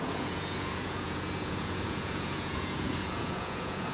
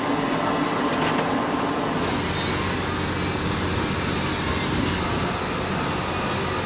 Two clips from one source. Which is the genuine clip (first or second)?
second